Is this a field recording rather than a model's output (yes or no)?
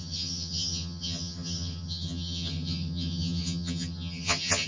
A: no